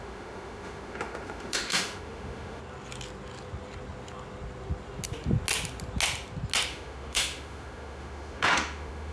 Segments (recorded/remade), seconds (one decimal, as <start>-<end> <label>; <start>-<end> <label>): 0.0-2.6 remade; 2.6-6.7 recorded; 6.7-9.1 remade